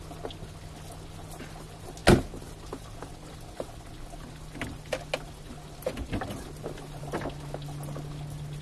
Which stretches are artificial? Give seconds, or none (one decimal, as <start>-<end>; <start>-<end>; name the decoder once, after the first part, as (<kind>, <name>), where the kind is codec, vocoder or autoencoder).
none